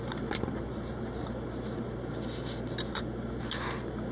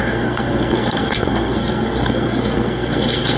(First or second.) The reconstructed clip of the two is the second